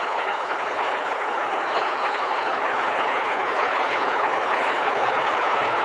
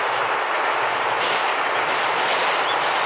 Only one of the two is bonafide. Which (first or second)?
second